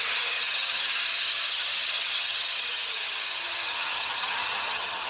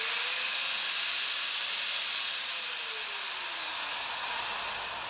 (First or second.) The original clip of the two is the second